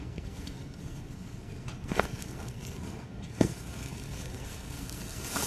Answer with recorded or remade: remade